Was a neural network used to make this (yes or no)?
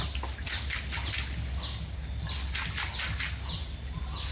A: no